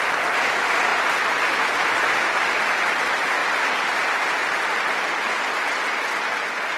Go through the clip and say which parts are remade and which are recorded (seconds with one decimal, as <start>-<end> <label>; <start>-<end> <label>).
0.0-3.4 remade; 3.4-5.6 recorded; 5.6-6.8 remade